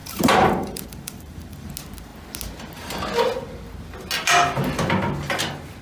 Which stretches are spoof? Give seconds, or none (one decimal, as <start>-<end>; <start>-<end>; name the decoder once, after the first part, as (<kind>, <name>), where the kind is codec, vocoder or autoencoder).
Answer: 0.0-1.7 (vocoder, BigVGAN v2)